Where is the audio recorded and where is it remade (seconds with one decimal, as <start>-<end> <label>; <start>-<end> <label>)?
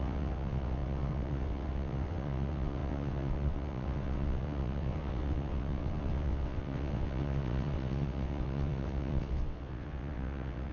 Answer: 0.0-10.7 remade